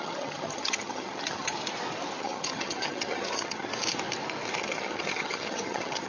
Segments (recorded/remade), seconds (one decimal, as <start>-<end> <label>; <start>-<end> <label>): 0.0-1.6 remade; 1.6-2.2 recorded; 2.2-3.7 remade; 3.7-4.6 recorded; 4.6-6.1 remade